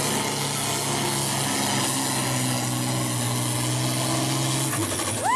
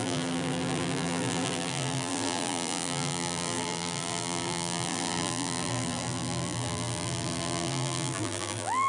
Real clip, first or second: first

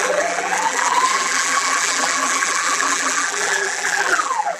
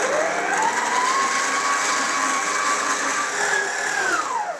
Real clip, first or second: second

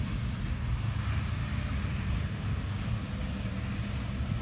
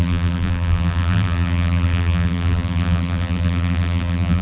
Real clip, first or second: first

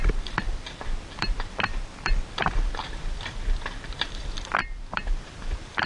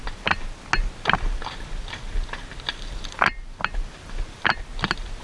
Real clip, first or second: second